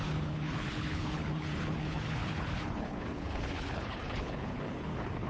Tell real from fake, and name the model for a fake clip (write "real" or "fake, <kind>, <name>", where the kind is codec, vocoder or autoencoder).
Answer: fake, codec, HILCodec